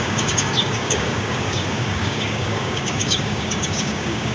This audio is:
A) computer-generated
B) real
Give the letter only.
A